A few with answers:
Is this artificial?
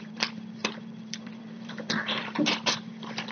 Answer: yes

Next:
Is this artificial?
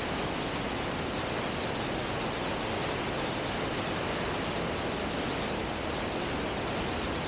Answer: no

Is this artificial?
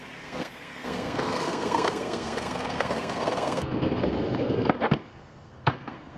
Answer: yes